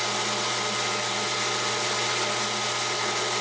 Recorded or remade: recorded